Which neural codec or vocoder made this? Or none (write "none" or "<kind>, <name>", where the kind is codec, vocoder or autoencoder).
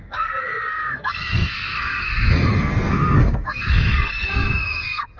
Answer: codec, SNAC